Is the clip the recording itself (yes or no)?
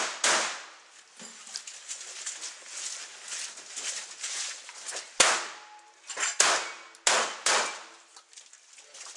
yes